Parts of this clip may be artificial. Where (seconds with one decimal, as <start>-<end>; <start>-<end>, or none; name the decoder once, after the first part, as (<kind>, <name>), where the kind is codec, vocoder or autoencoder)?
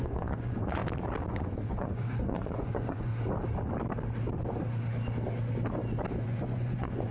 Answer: 0.0-0.8 (vocoder, Vocos); 1.3-3.1; 6.2-7.1